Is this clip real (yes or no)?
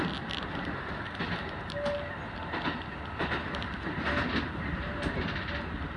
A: yes